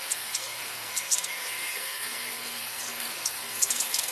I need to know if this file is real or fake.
fake